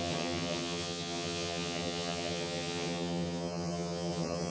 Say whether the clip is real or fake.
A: fake